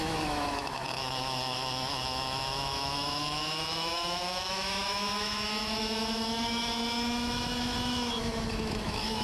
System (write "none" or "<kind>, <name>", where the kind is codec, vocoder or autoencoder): autoencoder, DAC-VAE